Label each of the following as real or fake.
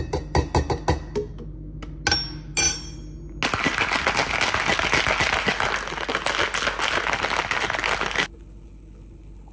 real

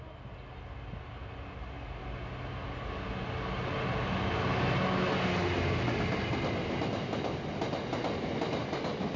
real